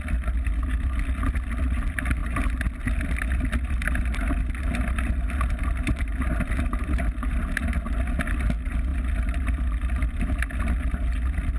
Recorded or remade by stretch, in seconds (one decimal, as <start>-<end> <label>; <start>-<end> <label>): 0.0-11.6 recorded